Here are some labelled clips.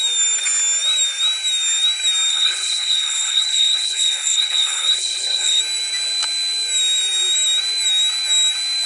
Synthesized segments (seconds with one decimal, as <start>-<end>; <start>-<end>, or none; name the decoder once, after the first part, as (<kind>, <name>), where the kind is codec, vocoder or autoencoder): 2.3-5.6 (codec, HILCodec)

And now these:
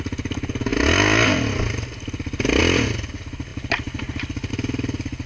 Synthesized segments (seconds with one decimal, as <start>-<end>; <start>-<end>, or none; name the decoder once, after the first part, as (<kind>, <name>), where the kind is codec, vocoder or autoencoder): none

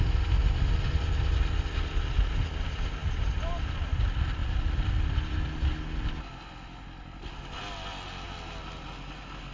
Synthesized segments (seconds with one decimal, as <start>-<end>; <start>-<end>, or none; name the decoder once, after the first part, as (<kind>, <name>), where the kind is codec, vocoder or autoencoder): none